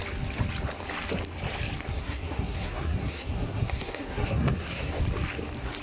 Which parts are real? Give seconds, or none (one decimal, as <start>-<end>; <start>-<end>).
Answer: 0.0-1.9; 4.9-5.8